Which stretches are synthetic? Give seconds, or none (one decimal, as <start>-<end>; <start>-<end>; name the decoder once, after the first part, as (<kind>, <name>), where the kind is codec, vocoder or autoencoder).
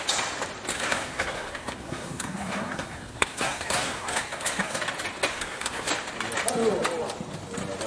0.7-4.8 (codec, SNAC); 5.3-5.9